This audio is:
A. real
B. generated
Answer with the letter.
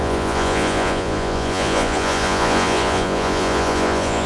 B